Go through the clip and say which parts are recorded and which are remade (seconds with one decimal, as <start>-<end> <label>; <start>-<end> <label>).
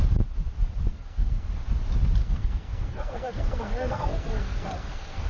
0.0-0.9 recorded; 0.9-1.5 remade; 1.5-2.2 recorded; 2.2-5.3 remade